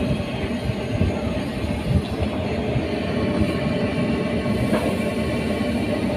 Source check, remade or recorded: recorded